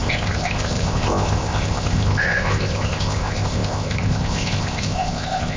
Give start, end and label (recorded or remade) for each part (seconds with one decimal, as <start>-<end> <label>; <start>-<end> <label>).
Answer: 0.0-5.6 remade